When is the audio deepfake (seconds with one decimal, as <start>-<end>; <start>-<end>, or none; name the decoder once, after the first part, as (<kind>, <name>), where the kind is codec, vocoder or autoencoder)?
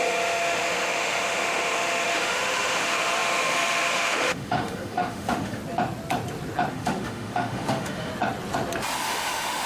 0.0-5.6 (autoencoder, DAC-VAE); 6.7-8.1; 9.0-9.7